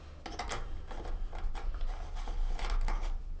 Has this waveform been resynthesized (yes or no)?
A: no